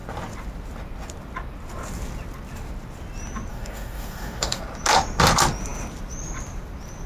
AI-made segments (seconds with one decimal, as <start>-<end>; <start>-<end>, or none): 3.5-4.6